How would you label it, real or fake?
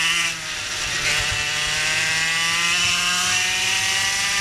real